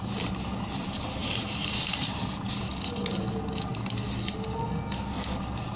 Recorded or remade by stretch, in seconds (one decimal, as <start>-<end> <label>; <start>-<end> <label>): 0.0-1.2 recorded; 1.2-2.7 remade; 2.7-5.8 recorded